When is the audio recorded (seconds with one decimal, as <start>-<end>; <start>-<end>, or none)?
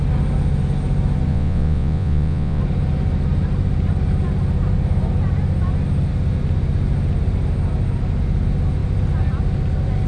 0.0-1.3; 2.6-10.1